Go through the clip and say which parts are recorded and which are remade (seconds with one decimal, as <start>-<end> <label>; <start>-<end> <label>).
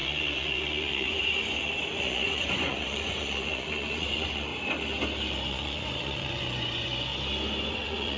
0.0-4.5 remade; 4.5-5.5 recorded; 5.5-7.1 remade; 7.1-7.7 recorded; 7.7-8.2 remade